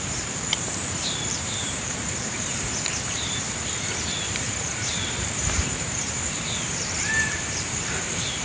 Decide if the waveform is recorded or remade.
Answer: remade